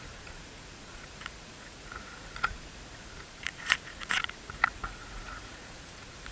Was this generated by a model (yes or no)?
yes